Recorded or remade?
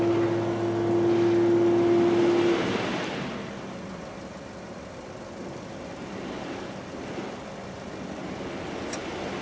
recorded